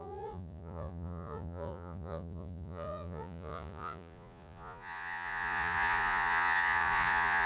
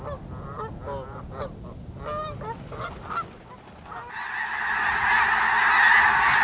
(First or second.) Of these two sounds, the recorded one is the second